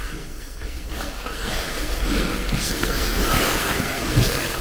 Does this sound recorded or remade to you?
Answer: remade